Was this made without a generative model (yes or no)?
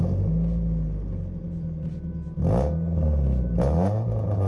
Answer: yes